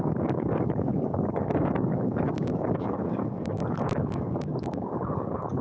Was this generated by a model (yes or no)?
yes